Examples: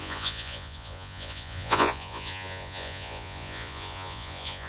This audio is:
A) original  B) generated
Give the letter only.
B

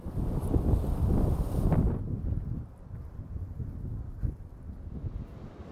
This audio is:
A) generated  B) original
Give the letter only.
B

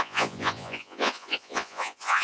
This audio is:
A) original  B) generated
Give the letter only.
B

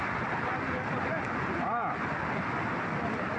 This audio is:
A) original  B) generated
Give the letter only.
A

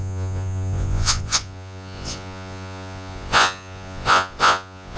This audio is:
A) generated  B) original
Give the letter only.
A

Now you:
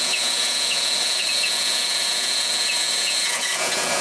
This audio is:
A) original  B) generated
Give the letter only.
B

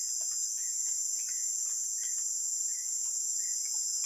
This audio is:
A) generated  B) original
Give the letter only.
A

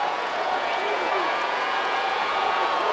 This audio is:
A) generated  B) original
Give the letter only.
A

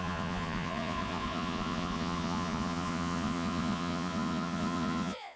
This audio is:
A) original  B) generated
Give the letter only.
B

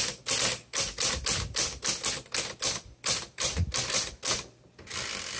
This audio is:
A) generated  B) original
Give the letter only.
B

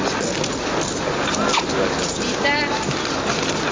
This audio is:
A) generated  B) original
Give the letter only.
B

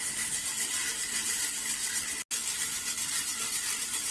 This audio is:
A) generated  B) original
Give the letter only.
B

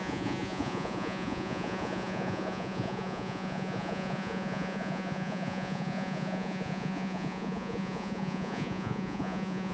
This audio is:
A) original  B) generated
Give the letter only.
B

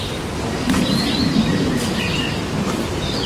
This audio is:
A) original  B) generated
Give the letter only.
A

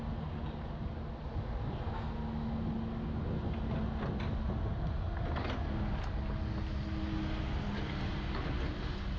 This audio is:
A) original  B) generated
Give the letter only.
A